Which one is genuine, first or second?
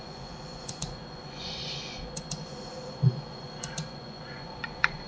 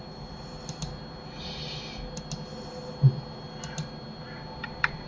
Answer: second